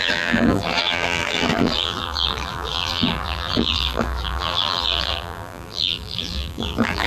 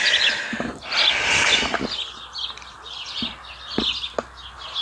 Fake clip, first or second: first